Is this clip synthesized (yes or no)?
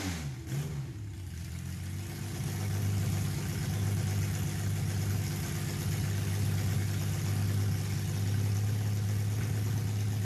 no